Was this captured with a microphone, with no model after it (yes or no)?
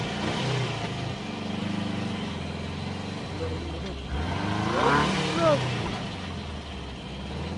yes